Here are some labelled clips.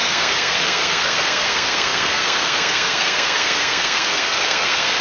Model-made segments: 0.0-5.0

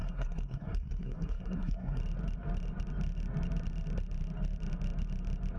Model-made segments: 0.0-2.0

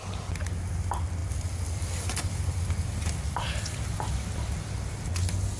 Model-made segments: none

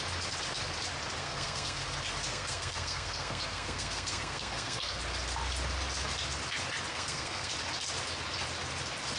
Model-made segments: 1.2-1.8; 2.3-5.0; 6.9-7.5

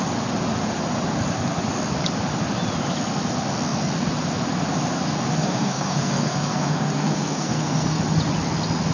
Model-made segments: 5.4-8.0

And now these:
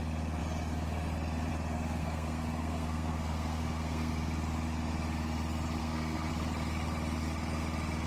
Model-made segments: 2.0-4.1; 5.8-6.3

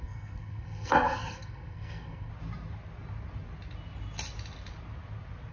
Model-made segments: 0.0-2.3

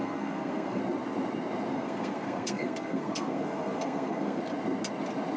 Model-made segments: 0.0-0.8; 1.7-4.4